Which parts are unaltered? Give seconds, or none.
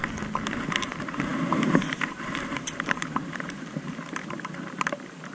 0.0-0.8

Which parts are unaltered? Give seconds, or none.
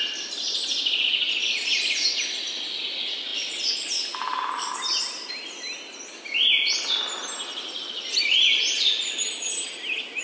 0.0-10.2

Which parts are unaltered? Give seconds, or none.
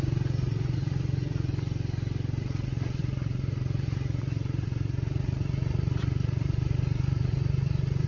1.5-2.4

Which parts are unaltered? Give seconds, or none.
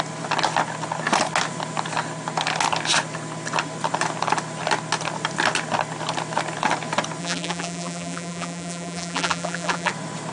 0.0-7.2; 9.9-10.3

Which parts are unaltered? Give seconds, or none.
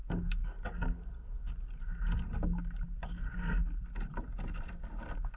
0.0-5.4